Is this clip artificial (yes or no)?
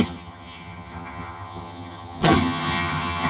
yes